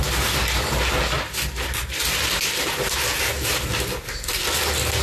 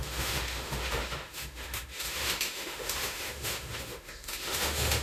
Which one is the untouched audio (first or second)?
first